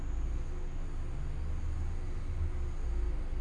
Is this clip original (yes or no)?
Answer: yes